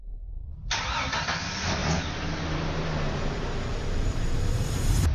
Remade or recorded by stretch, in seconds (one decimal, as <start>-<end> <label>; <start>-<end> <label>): 0.0-0.9 remade; 0.9-1.8 recorded; 1.8-5.1 remade